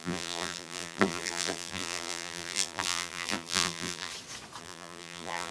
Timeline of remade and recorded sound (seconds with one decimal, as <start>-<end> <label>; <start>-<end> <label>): 0.0-4.1 remade; 4.1-4.6 recorded; 4.6-5.5 remade